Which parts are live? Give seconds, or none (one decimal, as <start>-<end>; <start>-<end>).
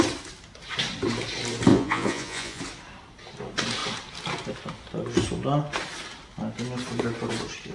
0.0-1.7; 2.6-7.7